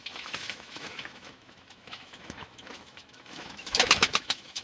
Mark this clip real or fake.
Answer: fake